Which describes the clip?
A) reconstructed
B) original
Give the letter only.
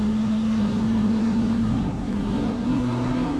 A